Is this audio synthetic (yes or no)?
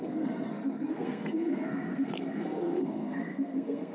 yes